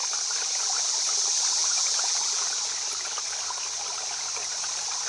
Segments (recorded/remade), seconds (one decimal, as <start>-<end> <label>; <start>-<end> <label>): 0.0-1.6 recorded; 1.6-2.7 remade; 2.7-5.1 recorded

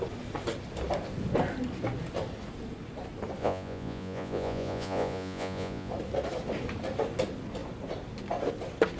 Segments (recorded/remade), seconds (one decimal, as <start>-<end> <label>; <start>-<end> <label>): 0.0-3.4 recorded; 3.4-5.9 remade; 5.9-9.0 recorded

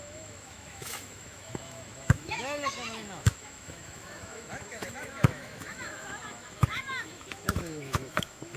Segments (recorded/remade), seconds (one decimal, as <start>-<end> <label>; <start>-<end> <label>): 0.0-8.6 remade

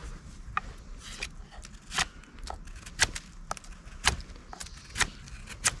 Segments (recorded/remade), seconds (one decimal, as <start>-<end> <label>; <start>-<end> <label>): 0.0-5.8 recorded

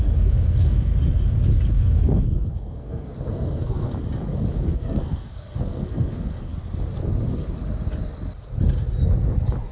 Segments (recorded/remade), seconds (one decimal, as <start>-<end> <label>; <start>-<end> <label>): 0.0-0.9 remade; 0.9-1.7 recorded; 1.7-3.9 remade; 3.9-4.5 recorded; 4.5-6.5 remade; 6.5-9.7 recorded

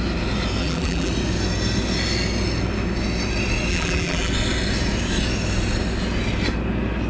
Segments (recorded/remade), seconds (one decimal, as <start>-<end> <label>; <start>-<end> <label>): 0.0-0.6 recorded; 0.6-1.1 remade; 1.1-3.7 recorded; 3.7-4.3 remade; 4.3-7.1 recorded

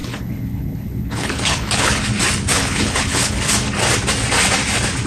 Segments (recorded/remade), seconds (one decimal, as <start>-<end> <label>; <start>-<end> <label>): 0.0-2.0 remade; 2.0-2.5 recorded; 2.5-3.4 remade; 3.4-5.1 recorded

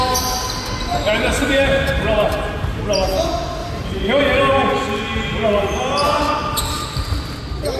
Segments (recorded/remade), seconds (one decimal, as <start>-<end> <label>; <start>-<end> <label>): 0.0-0.9 recorded; 0.9-2.6 remade; 2.6-3.6 recorded; 3.6-4.4 remade; 4.4-7.8 recorded